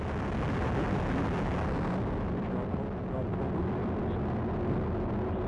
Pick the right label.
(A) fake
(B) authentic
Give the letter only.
B